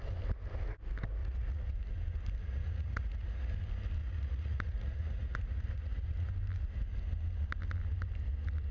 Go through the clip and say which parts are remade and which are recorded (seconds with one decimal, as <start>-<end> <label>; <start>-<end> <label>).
0.0-1.2 recorded; 1.2-1.8 remade; 1.8-2.4 recorded; 2.4-3.5 remade; 3.5-4.0 recorded; 4.0-6.3 remade; 6.3-8.7 recorded